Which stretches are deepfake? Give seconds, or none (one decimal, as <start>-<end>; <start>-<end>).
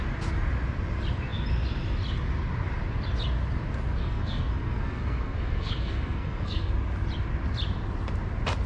4.0-6.7